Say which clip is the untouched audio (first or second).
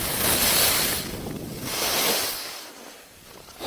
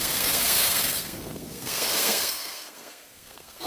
first